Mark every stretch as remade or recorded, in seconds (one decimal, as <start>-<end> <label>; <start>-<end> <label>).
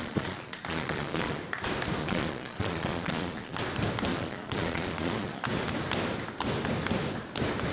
0.0-1.4 remade; 1.4-2.0 recorded; 2.0-3.6 remade; 3.6-4.1 recorded; 4.1-5.4 remade; 5.4-7.7 recorded